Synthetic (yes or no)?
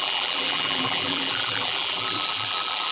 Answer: yes